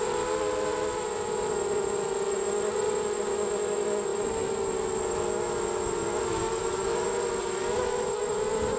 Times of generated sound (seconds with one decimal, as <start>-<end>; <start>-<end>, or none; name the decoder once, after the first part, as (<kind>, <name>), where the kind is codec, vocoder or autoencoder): none